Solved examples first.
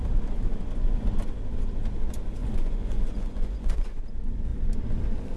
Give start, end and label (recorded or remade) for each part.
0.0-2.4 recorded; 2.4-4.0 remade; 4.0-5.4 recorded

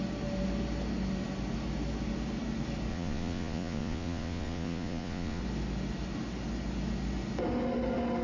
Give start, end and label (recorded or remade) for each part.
0.0-2.9 recorded; 2.9-5.4 remade; 5.4-8.2 recorded